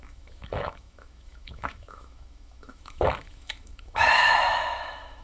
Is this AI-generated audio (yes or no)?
yes